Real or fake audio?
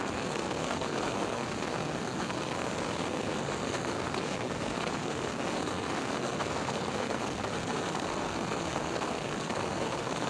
fake